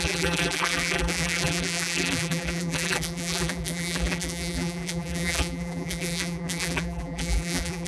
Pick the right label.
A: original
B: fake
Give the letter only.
B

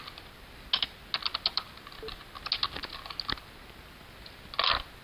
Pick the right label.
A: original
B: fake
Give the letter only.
A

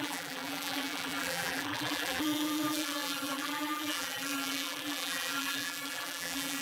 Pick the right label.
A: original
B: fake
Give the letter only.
B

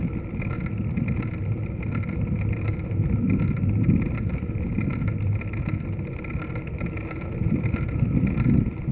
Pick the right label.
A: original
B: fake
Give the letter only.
A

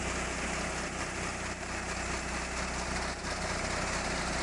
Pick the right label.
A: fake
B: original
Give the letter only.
B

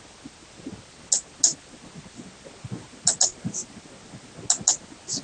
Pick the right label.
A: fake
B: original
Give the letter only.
B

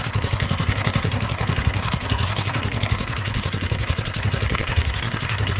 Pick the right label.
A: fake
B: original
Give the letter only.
A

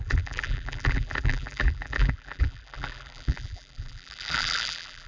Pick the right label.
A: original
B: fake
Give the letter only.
B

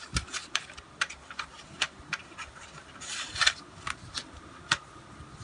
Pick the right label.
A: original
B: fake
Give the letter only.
B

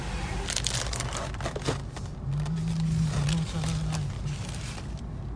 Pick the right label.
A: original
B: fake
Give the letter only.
A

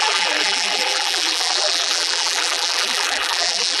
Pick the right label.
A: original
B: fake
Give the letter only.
B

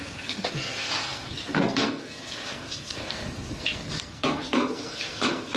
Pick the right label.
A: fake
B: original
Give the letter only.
A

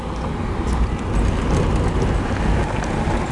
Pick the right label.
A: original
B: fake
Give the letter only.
A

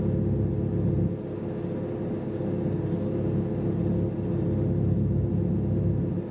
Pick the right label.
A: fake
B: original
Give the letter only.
B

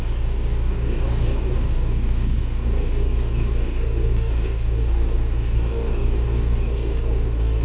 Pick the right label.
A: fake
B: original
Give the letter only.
A